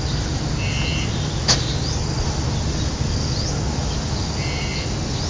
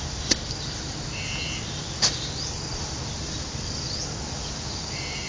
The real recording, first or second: first